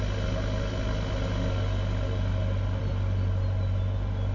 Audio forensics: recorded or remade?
recorded